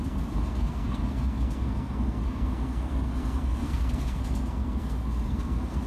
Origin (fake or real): fake